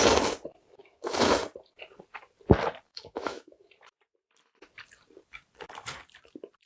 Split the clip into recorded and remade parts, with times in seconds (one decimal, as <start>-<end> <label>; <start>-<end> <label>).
0.0-0.8 recorded; 0.8-1.3 remade; 1.3-2.9 recorded; 2.9-3.7 remade; 3.7-6.7 recorded